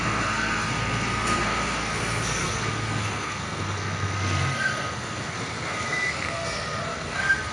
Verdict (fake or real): fake